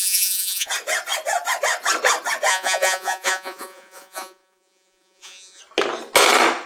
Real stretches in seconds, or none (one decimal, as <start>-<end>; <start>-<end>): 0.7-2.5; 5.6-6.7